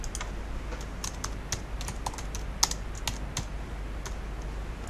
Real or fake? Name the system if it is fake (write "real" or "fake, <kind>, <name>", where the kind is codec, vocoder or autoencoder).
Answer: real